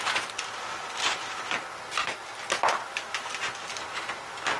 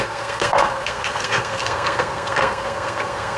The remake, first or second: second